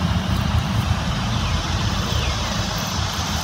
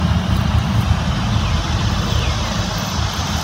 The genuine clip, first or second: second